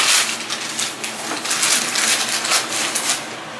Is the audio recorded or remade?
recorded